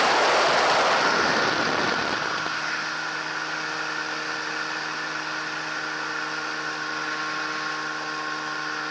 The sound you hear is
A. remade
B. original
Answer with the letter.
B